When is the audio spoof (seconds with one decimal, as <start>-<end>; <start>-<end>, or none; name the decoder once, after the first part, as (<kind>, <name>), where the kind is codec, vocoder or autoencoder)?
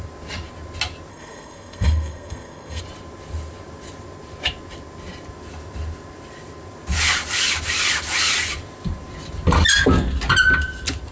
1.1-2.8 (codec, SNAC)